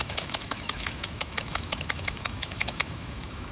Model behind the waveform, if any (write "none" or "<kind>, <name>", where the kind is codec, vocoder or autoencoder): autoencoder, DAC-VAE